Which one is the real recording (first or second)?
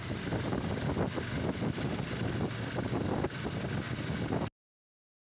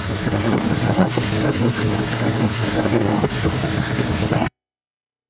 first